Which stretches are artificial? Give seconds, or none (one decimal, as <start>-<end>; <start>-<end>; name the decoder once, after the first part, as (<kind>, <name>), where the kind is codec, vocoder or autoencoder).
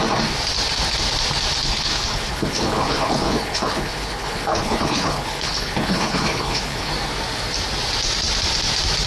1.6-6.9 (codec, HILCodec)